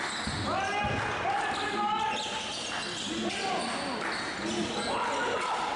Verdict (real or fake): real